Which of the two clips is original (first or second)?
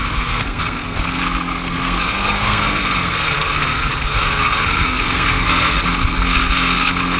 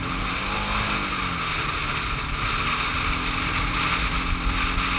second